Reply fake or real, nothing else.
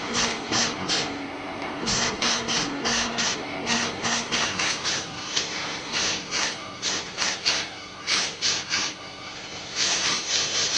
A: fake